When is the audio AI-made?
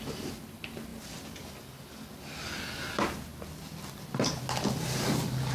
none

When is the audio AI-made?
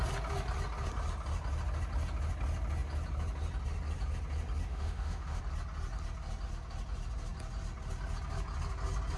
4.7-5.4 (autoencoder, DAC-VAE)